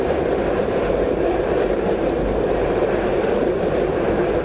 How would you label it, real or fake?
fake